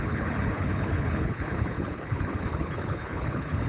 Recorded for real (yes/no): no